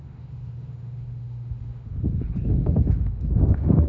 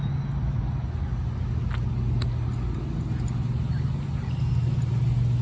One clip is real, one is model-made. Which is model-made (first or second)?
first